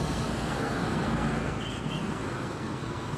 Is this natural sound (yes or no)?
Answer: no